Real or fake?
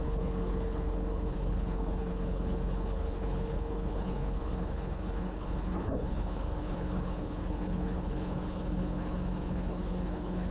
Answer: fake